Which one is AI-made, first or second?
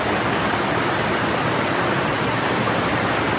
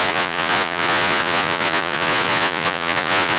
second